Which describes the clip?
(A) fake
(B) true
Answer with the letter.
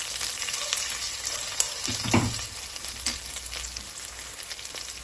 B